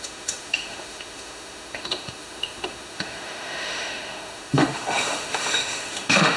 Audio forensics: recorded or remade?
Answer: remade